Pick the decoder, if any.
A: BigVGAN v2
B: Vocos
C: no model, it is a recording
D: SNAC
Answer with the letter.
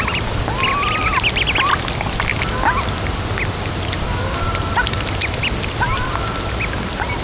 C